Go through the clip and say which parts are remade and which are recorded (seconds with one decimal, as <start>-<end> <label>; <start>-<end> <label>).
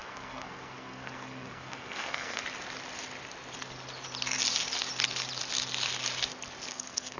0.0-2.4 remade; 2.4-6.7 recorded; 6.7-7.2 remade